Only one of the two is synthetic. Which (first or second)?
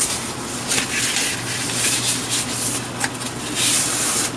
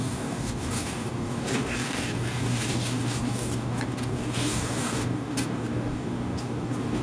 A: second